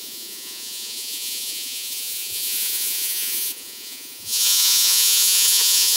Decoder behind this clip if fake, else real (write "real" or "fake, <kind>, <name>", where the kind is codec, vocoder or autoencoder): fake, vocoder, Vocos